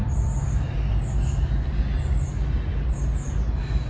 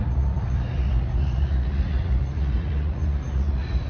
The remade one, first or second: second